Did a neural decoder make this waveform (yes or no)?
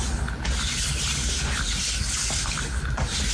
no